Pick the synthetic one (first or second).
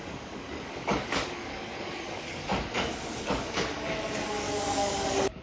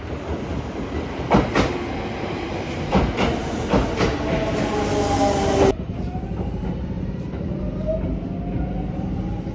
first